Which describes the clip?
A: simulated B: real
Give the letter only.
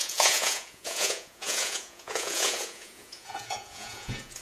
A